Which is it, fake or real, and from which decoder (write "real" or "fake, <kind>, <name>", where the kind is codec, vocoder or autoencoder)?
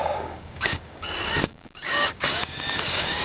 fake, codec, DAC